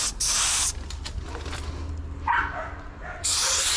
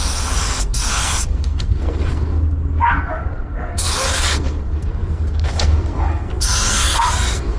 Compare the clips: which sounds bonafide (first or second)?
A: first